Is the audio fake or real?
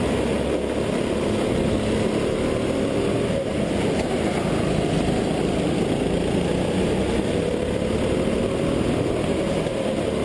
real